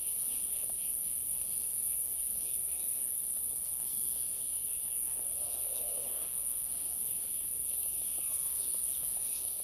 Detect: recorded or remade remade